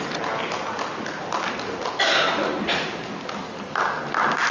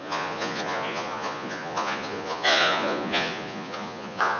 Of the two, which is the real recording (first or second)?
first